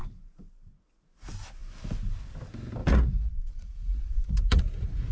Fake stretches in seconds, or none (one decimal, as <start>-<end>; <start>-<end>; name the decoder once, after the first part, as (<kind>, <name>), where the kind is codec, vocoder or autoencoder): 2.8-5.1 (vocoder, Vocos)